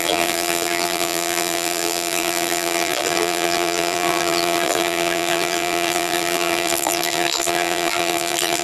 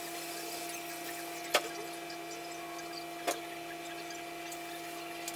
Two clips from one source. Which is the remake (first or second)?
first